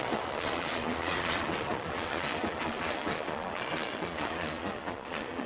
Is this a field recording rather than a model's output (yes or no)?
no